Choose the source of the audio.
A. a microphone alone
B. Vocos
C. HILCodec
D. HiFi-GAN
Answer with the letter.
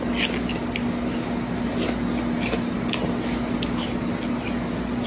A